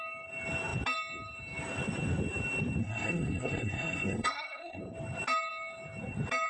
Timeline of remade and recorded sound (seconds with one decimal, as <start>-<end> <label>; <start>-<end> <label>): 0.0-2.8 recorded; 2.8-4.8 remade; 4.8-6.5 recorded